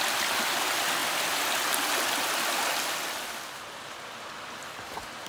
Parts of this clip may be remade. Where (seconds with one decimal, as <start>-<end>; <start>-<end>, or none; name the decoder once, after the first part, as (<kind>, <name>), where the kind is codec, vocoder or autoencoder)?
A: none